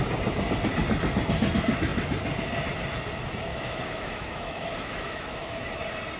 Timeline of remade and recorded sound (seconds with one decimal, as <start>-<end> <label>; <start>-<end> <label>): 0.0-3.5 recorded; 3.5-5.6 remade; 5.6-6.2 recorded